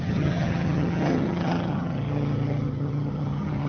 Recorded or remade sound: remade